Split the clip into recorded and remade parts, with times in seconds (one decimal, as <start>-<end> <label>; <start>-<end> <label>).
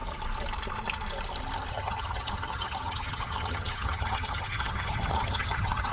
0.0-1.7 recorded; 1.7-5.9 remade